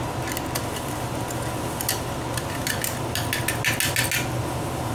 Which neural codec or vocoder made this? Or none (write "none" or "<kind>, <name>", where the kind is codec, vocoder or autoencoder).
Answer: none